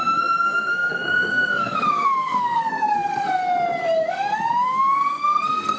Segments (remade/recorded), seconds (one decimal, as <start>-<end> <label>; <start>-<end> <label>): 0.0-3.4 remade; 3.4-4.1 recorded; 4.1-5.8 remade